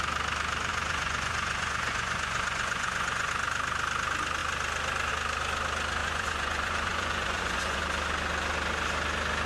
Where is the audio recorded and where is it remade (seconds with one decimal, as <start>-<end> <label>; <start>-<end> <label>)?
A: 0.0-0.7 recorded; 0.7-3.3 remade; 3.3-6.0 recorded; 6.0-7.8 remade; 7.8-9.5 recorded